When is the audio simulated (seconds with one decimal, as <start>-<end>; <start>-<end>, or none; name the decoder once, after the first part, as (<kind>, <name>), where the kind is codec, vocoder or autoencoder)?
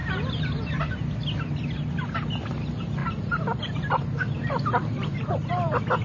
0.0-0.8 (vocoder, BigVGAN v2); 3.0-6.0